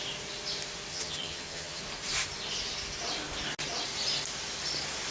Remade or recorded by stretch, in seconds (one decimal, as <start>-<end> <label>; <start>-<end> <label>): 0.0-0.9 recorded; 0.9-1.8 remade; 1.8-5.1 recorded